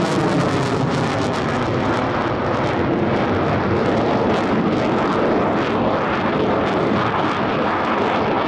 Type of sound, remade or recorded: recorded